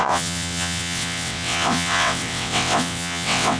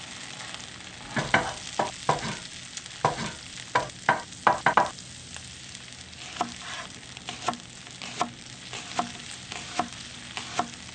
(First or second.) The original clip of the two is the second